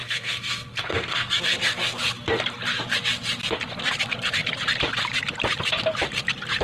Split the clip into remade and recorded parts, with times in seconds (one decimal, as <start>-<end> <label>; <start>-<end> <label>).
0.0-1.4 remade; 1.4-6.6 recorded